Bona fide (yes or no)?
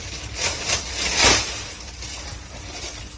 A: yes